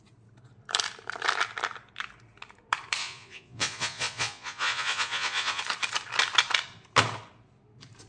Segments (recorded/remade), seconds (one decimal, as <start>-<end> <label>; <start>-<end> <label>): 0.0-3.0 recorded; 3.0-5.6 remade; 5.6-8.1 recorded